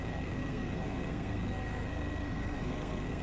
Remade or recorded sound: remade